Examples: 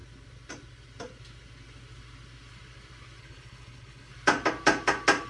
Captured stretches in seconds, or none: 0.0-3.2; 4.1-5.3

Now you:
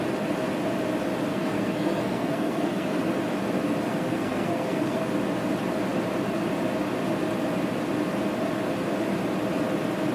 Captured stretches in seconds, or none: 0.0-1.3; 3.0-3.9; 5.1-10.1

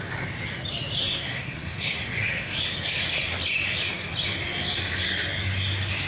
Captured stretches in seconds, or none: 0.0-1.0; 2.6-6.1

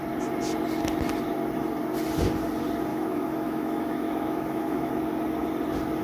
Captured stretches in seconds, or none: 0.0-2.9; 4.9-6.0

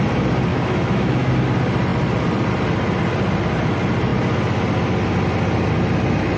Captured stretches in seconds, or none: 0.0-0.5; 1.3-6.4